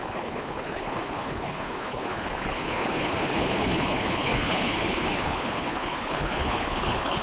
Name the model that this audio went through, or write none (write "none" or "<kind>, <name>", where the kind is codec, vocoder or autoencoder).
codec, HILCodec